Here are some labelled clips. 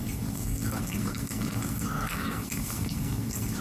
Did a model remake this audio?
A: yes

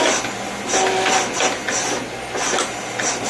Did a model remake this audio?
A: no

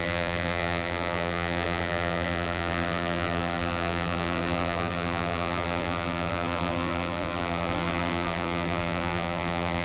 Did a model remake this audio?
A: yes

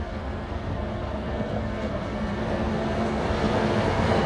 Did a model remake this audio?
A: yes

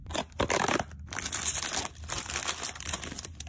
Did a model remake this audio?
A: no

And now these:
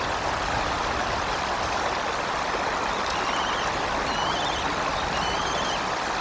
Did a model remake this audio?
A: no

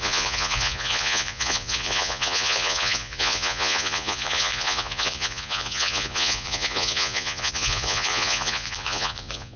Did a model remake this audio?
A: yes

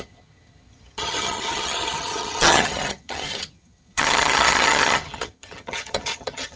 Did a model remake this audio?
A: yes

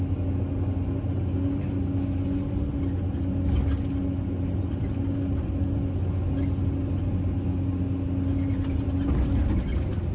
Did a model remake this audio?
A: no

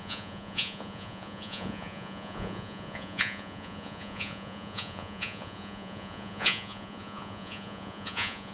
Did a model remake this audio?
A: yes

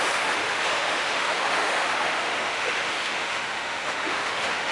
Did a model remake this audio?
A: yes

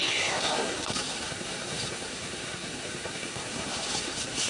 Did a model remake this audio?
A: yes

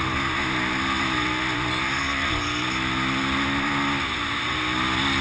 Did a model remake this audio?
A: no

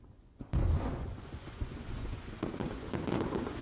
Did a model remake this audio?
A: yes